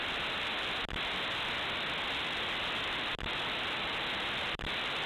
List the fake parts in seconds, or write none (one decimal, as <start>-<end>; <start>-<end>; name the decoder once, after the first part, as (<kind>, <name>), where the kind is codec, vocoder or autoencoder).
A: 4.4-5.1 (vocoder, BigVGAN v2)